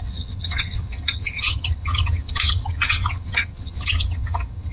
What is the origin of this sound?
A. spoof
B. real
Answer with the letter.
A